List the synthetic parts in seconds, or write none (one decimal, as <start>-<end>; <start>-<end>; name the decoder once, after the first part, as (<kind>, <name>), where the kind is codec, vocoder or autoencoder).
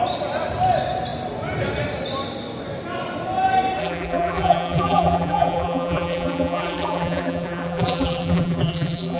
3.8-9.2 (vocoder, BigVGAN v2)